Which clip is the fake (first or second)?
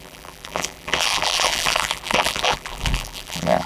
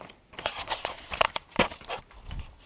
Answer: first